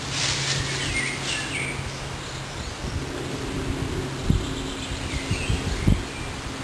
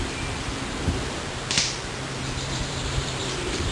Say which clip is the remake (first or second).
second